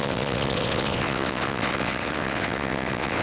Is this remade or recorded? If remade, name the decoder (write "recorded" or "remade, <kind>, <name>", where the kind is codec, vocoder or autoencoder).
remade, vocoder, WaveNeXt